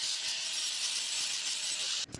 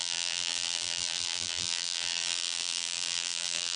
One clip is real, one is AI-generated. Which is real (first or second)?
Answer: first